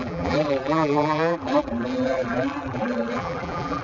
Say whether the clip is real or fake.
fake